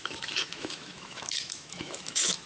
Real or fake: fake